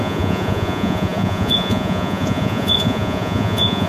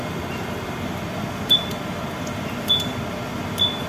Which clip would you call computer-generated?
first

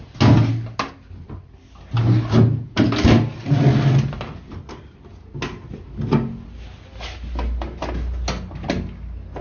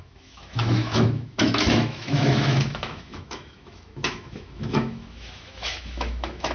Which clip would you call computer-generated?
second